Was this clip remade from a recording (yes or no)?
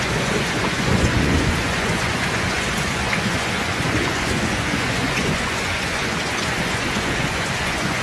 yes